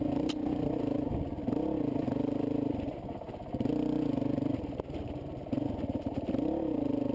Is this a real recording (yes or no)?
no